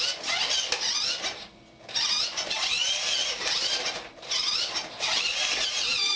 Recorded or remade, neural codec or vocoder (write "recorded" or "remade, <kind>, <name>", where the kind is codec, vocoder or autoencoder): recorded